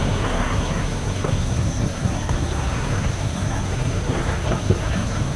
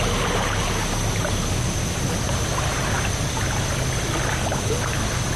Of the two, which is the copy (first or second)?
first